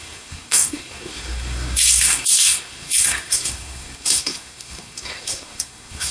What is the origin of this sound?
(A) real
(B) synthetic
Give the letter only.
B